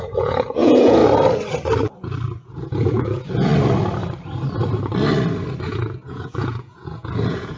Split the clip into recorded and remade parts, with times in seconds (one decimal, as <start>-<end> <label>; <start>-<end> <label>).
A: 0.0-1.0 remade; 1.0-2.4 recorded; 2.4-3.5 remade; 3.5-5.6 recorded; 5.6-7.6 remade